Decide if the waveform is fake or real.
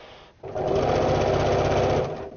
real